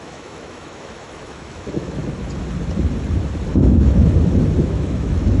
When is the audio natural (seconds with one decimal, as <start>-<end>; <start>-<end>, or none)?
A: 2.0-3.5; 4.0-4.6